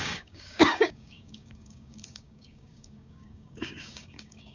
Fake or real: fake